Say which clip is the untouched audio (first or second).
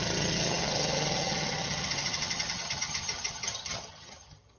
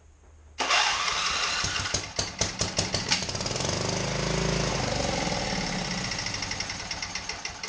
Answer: second